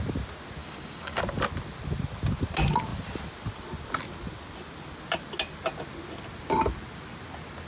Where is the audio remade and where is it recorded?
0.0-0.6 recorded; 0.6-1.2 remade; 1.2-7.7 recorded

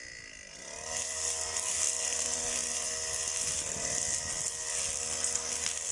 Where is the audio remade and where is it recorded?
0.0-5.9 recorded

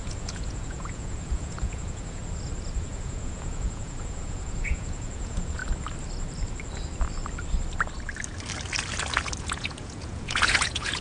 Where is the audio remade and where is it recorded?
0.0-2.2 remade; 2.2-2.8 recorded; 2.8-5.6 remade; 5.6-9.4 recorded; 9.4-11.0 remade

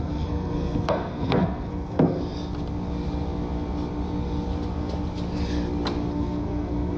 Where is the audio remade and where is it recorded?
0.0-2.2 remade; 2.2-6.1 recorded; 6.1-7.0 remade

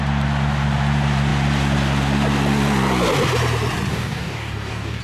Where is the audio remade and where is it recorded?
0.0-3.9 recorded; 3.9-5.0 remade

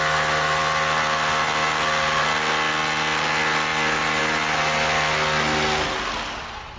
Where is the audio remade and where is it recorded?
0.0-6.8 recorded

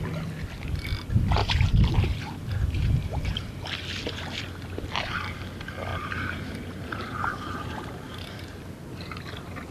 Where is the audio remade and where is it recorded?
0.0-1.4 recorded; 1.4-3.5 remade; 3.5-5.9 recorded; 5.9-8.5 remade; 8.5-9.7 recorded